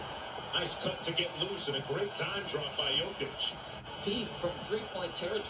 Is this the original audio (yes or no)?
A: no